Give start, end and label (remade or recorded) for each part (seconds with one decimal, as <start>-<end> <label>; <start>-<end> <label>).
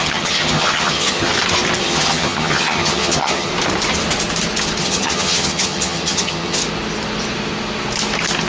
0.0-1.3 remade; 1.3-1.8 recorded; 1.8-3.5 remade; 3.5-4.8 recorded; 4.8-6.6 remade; 6.6-8.5 recorded